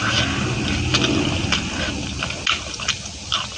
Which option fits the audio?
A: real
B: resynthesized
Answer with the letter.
A